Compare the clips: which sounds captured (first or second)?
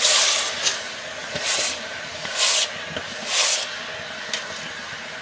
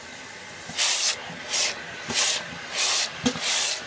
first